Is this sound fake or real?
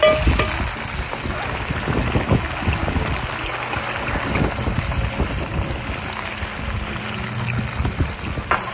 real